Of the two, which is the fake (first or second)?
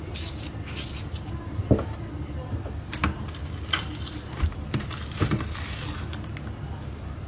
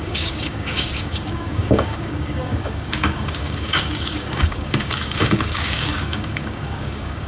second